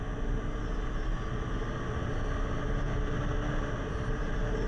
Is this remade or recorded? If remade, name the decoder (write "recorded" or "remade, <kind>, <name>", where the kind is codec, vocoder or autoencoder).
recorded